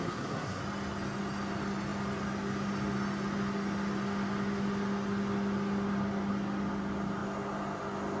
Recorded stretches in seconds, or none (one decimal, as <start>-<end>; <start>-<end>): 0.6-8.2